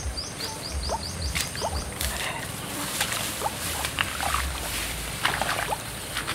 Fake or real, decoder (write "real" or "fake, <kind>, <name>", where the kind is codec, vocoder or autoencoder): fake, vocoder, BigVGAN v2